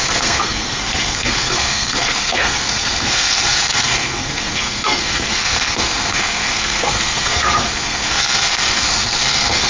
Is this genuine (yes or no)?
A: no